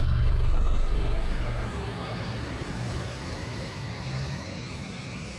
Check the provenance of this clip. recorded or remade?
remade